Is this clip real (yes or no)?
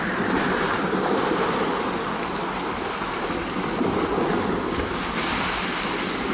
yes